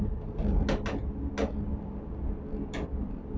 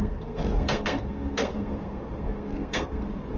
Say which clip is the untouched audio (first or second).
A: first